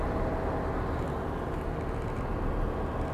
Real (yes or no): yes